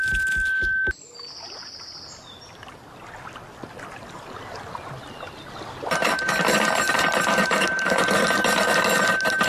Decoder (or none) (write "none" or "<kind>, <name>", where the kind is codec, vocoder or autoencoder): none